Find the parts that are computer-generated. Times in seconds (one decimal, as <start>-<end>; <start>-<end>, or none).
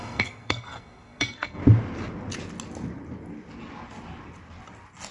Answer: 0.0-1.6